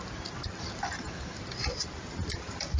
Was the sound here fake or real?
real